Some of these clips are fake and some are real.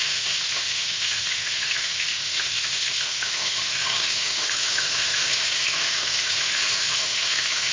fake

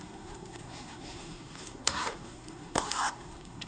fake